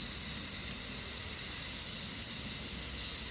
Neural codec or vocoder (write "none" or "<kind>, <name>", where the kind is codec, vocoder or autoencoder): none